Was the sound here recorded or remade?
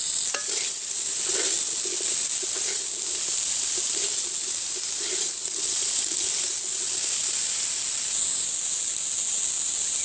recorded